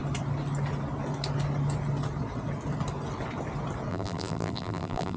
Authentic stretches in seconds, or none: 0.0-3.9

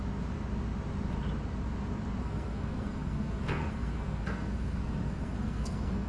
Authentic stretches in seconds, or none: 0.0-2.2